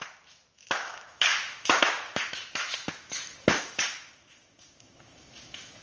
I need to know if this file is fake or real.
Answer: fake